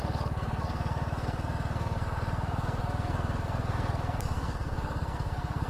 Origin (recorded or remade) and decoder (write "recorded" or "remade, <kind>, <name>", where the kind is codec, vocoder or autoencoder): remade, codec, SNAC